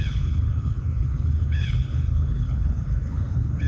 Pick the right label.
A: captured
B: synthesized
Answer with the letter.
B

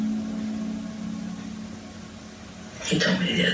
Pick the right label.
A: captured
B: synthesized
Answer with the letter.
A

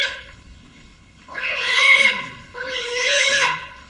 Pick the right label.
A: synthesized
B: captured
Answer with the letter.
A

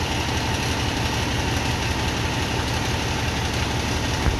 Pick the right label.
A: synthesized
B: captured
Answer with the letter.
B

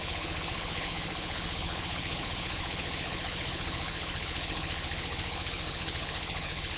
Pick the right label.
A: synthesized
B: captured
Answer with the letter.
A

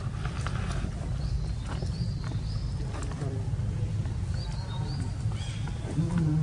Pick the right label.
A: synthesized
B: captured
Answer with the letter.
B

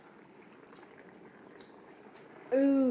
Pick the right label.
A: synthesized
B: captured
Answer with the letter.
B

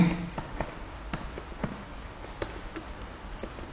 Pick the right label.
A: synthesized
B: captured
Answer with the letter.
B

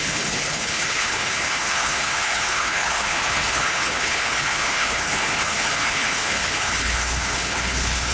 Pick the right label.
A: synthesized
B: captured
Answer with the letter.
A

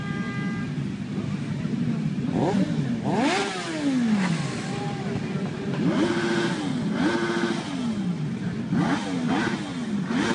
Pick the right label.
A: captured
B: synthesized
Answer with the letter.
A